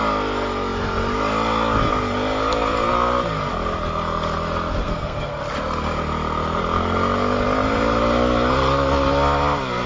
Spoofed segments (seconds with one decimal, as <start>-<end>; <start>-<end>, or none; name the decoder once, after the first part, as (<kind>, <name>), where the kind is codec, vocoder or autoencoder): 4.8-5.4 (codec, SNAC)

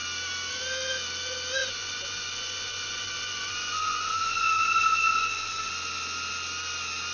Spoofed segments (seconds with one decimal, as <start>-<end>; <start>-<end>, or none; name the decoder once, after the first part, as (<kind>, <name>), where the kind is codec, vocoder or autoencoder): 1.6-5.7 (vocoder, Vocos)

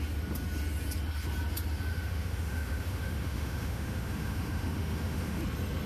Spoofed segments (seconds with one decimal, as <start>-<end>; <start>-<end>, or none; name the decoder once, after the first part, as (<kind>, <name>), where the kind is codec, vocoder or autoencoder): 1.9-5.4 (autoencoder, DAC-VAE)

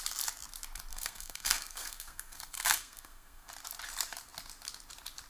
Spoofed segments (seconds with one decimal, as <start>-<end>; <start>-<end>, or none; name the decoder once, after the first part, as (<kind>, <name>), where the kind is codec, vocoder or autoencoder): 0.9-3.5 (codec, SNAC)

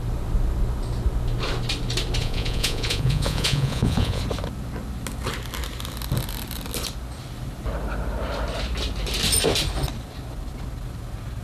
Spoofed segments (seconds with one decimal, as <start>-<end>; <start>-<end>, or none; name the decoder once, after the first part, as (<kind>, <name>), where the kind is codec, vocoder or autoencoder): 2.2-4.2 (vocoder, Vocos)